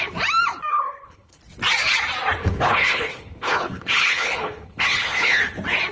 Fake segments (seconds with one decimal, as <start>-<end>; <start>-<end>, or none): 0.7-1.4; 2.4-5.4